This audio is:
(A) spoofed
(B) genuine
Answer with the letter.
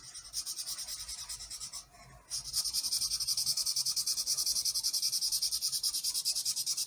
B